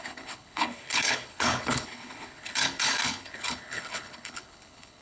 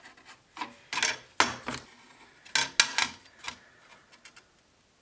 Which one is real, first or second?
second